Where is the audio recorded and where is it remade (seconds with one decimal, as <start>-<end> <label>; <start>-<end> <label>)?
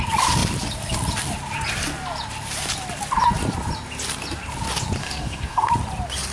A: 0.0-5.0 recorded; 5.0-5.7 remade; 5.7-6.3 recorded